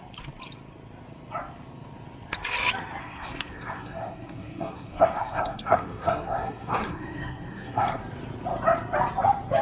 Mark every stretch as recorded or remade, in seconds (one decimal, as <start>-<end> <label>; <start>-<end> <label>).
0.0-3.0 recorded; 3.0-8.0 remade; 8.0-9.6 recorded